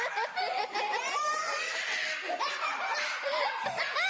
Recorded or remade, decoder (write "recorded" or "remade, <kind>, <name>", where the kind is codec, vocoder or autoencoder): recorded